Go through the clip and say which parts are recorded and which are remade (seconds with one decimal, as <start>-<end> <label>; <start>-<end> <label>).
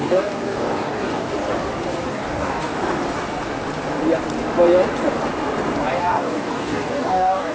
0.0-1.3 remade; 1.3-2.1 recorded; 2.1-2.8 remade; 2.8-6.0 recorded; 6.0-7.5 remade